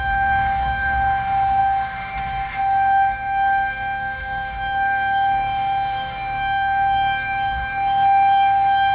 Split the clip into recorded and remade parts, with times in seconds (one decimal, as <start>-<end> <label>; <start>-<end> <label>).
0.0-8.9 remade